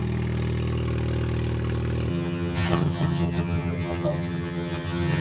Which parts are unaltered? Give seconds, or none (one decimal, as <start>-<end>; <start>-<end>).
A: 0.0-2.1